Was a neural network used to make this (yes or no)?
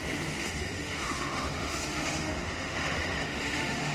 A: yes